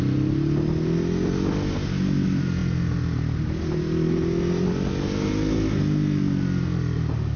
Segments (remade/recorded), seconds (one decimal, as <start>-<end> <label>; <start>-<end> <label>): 0.0-7.4 recorded